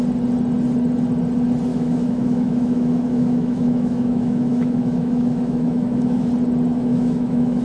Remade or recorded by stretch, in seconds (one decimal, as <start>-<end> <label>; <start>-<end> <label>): 0.0-1.7 recorded; 1.7-6.3 remade; 6.3-6.7 recorded; 6.7-7.6 remade